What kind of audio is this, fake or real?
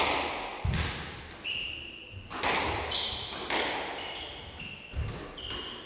real